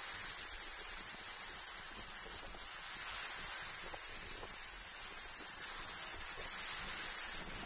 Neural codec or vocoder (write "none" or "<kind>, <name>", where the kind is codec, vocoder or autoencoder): none